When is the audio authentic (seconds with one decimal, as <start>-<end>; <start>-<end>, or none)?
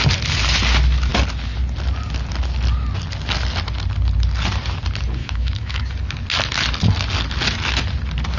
0.0-5.2; 5.8-8.4